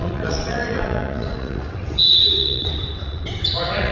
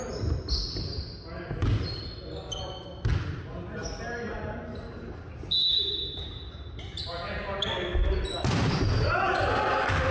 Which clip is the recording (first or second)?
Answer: second